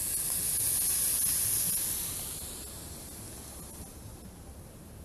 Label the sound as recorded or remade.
recorded